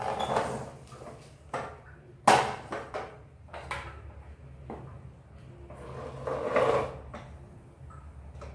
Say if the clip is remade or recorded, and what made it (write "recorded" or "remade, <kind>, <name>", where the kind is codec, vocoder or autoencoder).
recorded